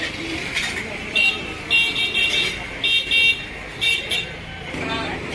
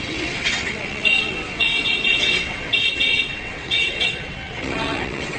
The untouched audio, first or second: first